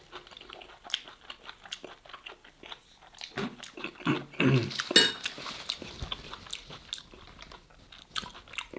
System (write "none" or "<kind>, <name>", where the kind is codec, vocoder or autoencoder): none